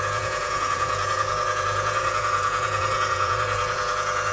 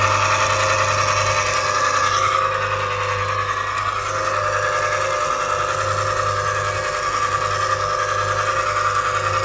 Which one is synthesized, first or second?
first